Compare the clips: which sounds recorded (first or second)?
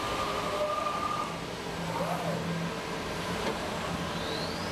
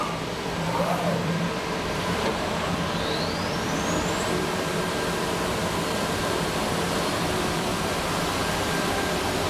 first